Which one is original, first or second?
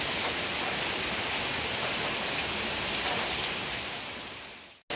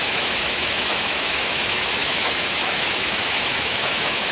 first